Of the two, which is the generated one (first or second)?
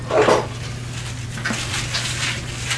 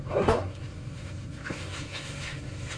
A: second